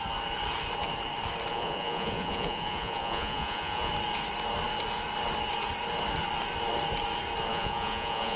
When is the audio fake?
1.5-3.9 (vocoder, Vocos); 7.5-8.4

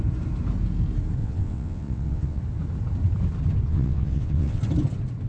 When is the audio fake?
1.2-2.4 (vocoder, WaveNeXt); 3.7-4.6

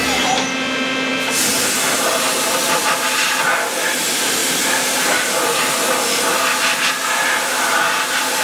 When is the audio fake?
4.4-5.3 (vocoder, BigVGAN v2)

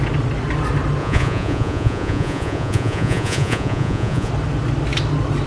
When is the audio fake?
1.0-4.3 (vocoder, Vocos)

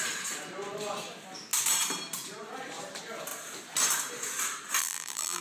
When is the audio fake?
4.8-5.4 (vocoder, BigVGAN v2)